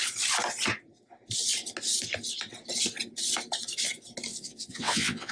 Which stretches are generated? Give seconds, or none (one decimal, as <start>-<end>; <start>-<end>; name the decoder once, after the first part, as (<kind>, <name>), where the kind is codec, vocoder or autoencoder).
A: 4.3-5.3 (vocoder, WaveNeXt)